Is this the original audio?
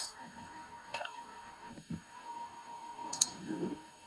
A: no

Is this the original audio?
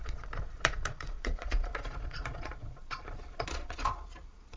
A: no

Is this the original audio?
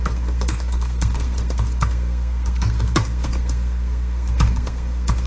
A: no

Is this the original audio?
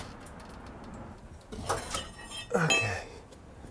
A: yes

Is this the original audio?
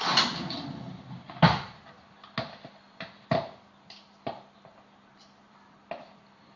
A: yes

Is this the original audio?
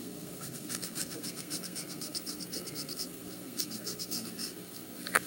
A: no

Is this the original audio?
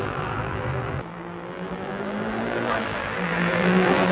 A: no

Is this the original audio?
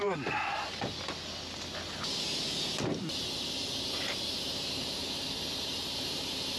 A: yes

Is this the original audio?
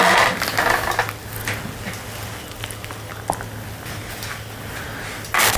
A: yes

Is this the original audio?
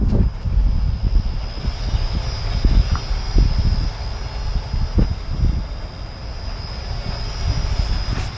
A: yes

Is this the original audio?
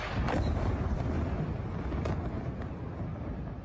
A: yes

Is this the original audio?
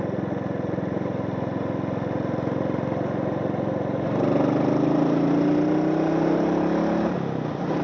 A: yes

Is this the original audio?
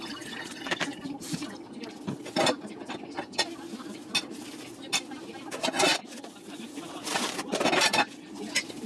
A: yes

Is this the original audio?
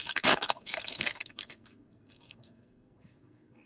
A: no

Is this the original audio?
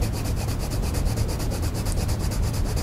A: yes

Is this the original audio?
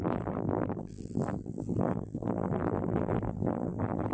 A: no